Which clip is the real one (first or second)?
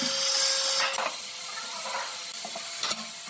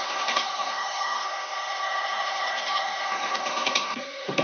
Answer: first